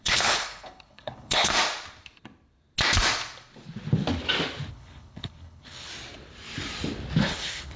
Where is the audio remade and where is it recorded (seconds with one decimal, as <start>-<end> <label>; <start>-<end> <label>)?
0.0-1.5 remade; 1.5-4.7 recorded; 4.7-5.9 remade; 5.9-7.2 recorded; 7.2-7.8 remade